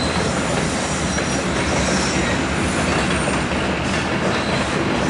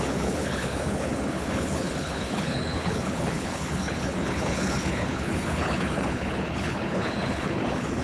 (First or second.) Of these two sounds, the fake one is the second